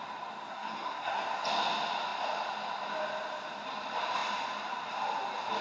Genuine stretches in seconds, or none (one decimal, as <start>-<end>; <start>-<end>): 0.0-0.5; 1.3-5.6